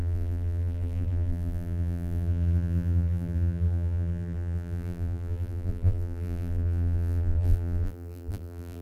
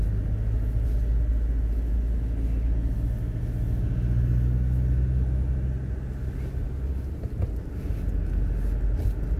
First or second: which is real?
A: second